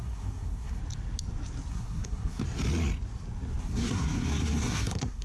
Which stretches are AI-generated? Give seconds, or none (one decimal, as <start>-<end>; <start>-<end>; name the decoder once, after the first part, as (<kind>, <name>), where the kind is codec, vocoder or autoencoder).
0.0-0.8 (codec, SNAC); 1.7-2.4; 3.6-5.2